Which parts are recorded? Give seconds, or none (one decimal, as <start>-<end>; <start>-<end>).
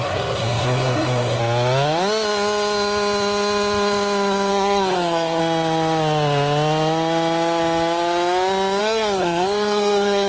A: 1.4-4.5; 5.4-8.8